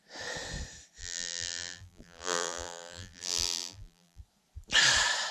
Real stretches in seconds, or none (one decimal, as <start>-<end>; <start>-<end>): 0.0-1.0; 4.2-5.3